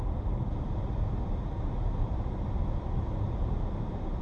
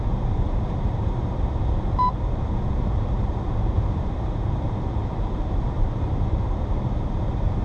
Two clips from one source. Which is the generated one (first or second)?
second